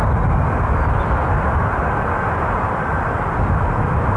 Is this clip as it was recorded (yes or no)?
yes